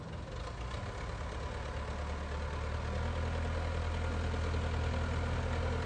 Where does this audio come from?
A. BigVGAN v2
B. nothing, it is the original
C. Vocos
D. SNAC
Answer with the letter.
B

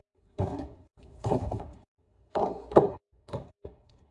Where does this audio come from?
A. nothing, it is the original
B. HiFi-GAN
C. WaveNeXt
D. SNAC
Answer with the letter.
D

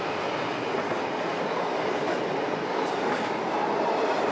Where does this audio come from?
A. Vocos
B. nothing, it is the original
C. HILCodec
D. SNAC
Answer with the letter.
B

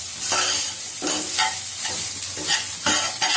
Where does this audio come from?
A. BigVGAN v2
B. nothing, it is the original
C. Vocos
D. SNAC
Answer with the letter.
B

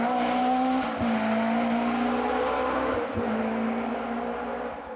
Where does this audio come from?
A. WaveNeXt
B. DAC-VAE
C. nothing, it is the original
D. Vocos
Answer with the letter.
C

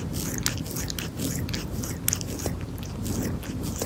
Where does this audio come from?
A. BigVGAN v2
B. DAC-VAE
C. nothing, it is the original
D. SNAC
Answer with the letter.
C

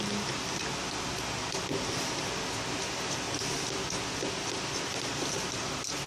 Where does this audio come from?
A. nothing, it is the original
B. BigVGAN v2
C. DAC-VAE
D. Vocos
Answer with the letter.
A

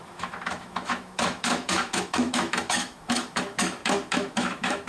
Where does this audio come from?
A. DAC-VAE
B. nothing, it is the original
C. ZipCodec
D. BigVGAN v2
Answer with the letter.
A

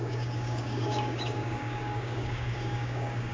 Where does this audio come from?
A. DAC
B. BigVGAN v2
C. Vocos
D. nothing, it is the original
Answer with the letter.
A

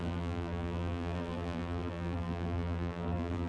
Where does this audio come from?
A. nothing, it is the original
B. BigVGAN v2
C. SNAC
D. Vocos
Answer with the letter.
B